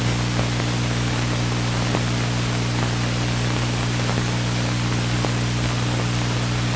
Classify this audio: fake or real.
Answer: real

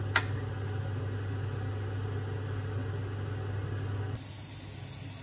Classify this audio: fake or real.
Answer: real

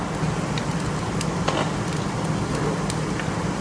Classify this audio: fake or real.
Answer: real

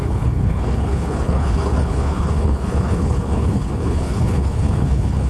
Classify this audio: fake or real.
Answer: fake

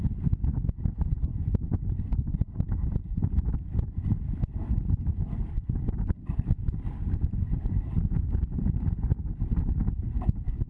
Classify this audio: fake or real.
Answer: real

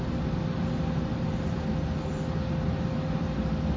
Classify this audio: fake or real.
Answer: real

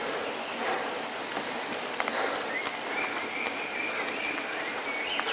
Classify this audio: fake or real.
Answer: real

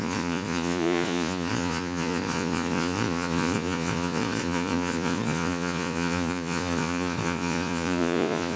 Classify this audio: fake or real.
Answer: fake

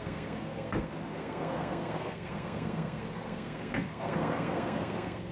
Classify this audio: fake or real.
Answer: fake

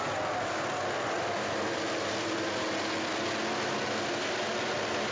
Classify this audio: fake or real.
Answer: real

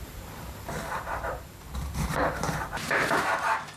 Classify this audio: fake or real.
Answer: fake